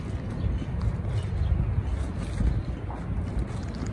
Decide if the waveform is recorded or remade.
recorded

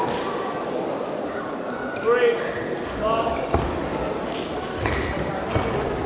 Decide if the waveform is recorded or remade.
recorded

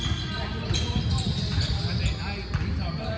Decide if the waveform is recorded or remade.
recorded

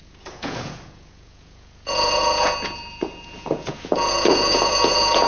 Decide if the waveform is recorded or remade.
remade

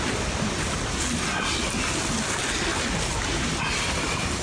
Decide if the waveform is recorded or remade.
recorded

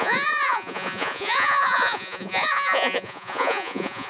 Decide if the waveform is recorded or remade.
remade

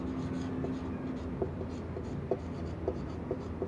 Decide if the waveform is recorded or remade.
recorded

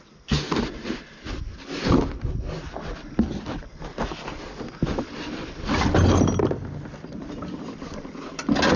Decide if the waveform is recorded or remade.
recorded